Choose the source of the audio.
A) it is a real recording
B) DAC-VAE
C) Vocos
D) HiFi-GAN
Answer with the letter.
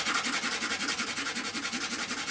A